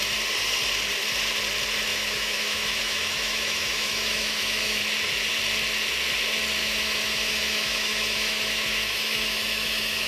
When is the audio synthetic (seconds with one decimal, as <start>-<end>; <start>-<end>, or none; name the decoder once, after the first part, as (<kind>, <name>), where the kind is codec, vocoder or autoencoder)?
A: 1.9-4.8 (autoencoder, DAC-VAE); 6.6-10.1